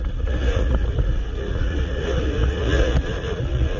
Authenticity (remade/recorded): remade